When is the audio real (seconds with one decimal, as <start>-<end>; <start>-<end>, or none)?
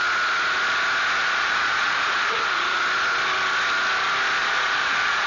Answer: 0.0-1.2; 2.8-4.4